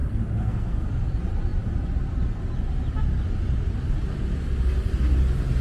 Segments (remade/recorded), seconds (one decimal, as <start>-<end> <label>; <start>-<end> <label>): 0.0-0.9 remade; 0.9-5.6 recorded